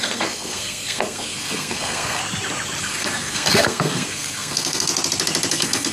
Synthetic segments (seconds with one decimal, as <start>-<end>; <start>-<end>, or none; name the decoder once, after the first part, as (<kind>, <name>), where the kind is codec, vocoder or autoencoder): 0.0-2.2 (codec, SNAC); 2.8-4.9; 5.5-5.9